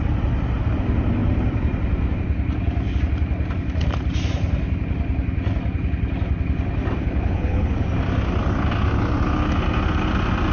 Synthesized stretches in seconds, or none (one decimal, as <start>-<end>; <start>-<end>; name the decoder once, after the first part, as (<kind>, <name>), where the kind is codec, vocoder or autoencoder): 7.0-7.7 (codec, HILCodec)